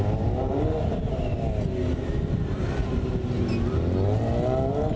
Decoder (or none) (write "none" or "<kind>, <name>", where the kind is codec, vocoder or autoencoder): none